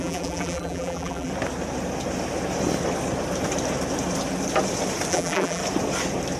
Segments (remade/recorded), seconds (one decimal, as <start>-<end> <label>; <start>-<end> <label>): 0.0-1.3 remade; 1.3-5.1 recorded; 5.1-5.6 remade; 5.6-6.4 recorded